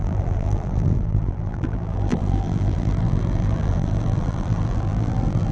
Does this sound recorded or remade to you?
remade